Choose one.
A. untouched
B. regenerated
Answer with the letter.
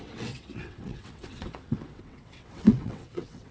B